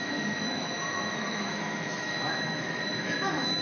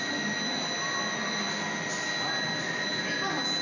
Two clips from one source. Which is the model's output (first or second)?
first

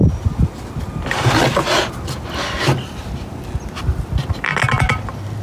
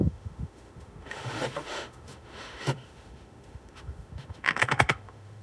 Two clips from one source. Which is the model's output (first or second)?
second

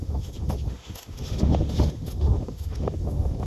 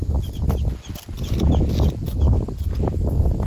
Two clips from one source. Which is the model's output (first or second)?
first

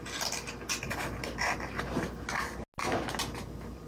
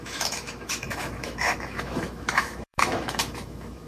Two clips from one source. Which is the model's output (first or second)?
second